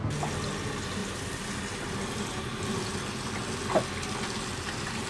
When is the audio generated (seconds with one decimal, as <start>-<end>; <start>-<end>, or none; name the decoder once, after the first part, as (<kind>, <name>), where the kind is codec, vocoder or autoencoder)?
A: none